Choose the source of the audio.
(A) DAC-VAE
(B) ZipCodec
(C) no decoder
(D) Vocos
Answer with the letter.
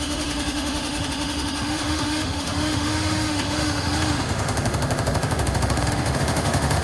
A